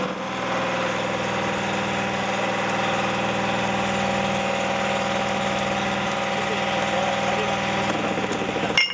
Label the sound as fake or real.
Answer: real